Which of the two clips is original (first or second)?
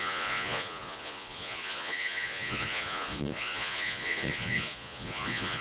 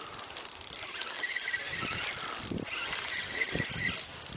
second